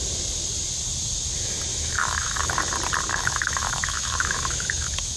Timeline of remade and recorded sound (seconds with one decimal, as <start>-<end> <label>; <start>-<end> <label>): 0.0-1.7 recorded; 1.7-2.5 remade; 2.5-3.1 recorded; 3.1-5.2 remade